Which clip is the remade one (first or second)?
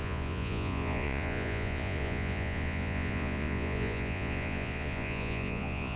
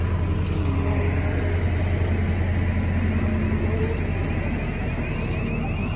first